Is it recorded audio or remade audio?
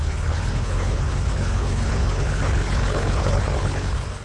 remade